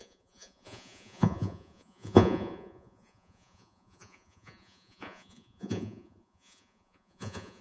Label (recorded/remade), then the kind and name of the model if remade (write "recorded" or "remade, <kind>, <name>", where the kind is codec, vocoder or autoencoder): remade, vocoder, Vocos